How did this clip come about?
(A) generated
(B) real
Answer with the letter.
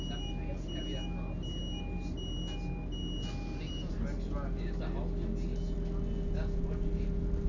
B